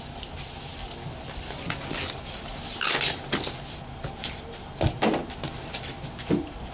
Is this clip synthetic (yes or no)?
no